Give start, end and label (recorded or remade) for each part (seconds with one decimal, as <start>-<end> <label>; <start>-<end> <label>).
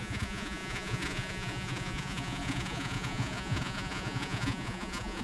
0.0-5.2 remade